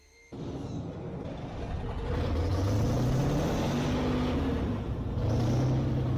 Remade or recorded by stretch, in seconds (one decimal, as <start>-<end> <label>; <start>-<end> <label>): 0.0-6.2 recorded